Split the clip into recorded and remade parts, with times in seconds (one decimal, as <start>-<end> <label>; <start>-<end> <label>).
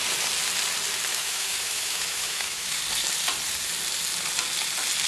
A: 0.0-1.1 recorded; 1.1-2.8 remade; 2.8-5.1 recorded